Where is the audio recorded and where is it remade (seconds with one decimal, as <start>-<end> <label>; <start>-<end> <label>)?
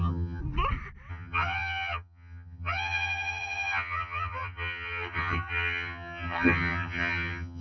0.0-0.4 remade; 0.4-1.1 recorded; 1.1-7.6 remade